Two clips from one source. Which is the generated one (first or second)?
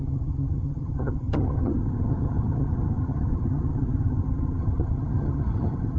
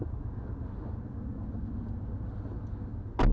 first